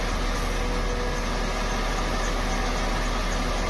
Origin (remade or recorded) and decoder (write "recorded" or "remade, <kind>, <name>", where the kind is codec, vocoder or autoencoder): recorded